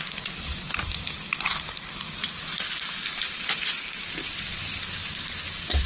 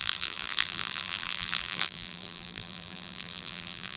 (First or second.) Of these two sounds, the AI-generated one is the second